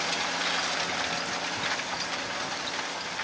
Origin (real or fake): real